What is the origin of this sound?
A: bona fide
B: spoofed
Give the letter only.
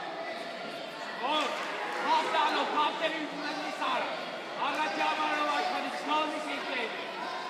A